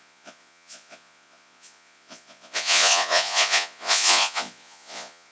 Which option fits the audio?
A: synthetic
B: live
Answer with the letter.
A